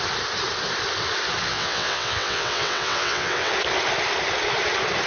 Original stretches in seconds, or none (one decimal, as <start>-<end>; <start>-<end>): 0.0-1.5; 3.5-5.1